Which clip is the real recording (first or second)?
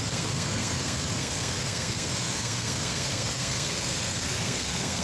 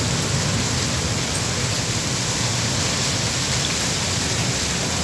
second